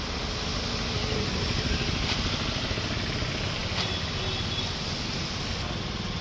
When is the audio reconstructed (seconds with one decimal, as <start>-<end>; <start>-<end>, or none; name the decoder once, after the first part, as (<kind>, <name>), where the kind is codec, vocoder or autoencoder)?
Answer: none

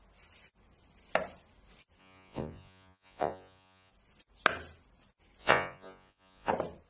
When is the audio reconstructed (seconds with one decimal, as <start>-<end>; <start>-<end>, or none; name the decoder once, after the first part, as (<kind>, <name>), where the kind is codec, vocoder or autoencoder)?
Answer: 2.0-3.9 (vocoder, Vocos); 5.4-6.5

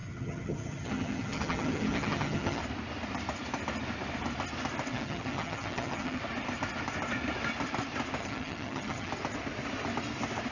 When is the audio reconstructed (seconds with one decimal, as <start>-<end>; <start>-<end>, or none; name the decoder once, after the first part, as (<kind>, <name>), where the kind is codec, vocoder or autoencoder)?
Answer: 0.0-2.6 (vocoder, HiFi-GAN); 4.9-6.2; 8.2-9.1

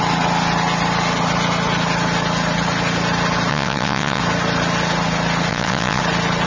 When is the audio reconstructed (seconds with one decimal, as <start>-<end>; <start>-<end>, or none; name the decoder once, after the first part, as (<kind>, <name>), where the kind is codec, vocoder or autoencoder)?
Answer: 3.5-4.2 (vocoder, WaveNeXt); 5.5-6.0